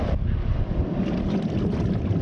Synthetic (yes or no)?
no